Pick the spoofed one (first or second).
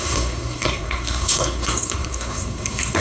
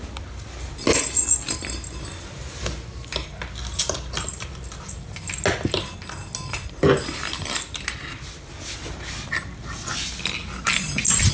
first